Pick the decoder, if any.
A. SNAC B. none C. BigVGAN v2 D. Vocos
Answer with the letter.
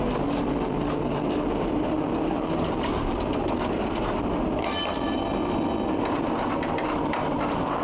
B